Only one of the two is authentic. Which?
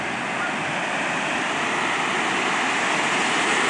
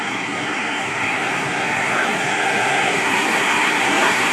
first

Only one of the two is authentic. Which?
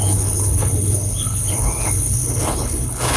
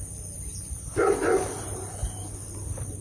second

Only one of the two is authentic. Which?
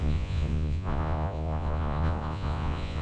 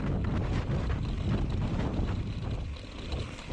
second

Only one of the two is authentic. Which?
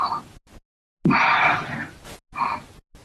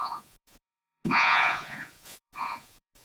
first